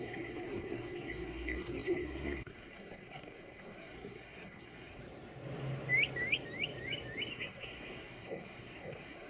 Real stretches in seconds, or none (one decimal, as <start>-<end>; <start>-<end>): 5.0-7.3